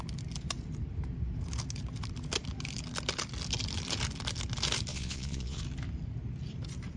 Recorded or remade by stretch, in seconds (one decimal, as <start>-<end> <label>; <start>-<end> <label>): 0.0-4.9 recorded; 4.9-5.6 remade; 5.6-7.0 recorded